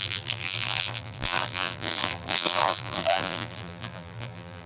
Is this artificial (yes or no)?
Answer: yes